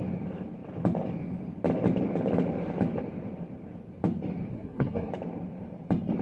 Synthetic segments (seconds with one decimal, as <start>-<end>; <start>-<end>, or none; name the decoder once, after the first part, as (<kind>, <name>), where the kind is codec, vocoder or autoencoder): 4.5-5.1 (codec, SNAC)